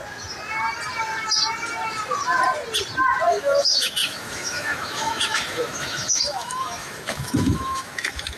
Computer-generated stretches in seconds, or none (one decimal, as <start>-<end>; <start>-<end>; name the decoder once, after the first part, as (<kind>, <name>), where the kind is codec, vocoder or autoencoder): 3.3-8.4 (autoencoder, DAC-VAE)